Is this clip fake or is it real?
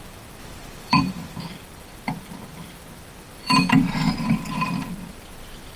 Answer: fake